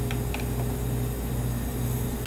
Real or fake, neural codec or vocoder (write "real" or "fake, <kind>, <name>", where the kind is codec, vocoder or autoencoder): real